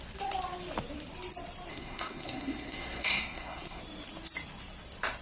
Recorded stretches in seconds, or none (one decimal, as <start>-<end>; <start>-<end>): 0.0-1.7; 3.8-5.2

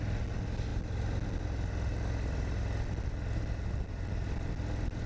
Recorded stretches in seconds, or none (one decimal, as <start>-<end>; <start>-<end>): 0.0-5.1

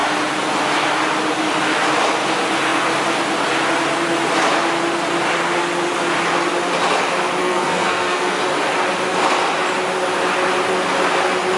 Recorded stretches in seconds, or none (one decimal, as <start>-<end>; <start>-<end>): 0.0-7.4; 8.4-11.6